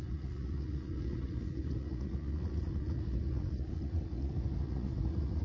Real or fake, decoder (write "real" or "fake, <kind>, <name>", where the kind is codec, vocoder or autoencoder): fake, vocoder, Vocos